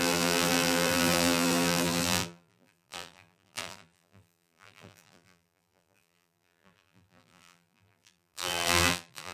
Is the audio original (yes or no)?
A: no